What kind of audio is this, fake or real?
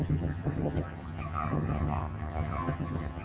fake